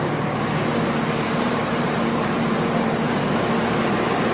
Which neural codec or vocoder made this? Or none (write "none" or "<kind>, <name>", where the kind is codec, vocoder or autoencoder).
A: vocoder, BigVGAN v2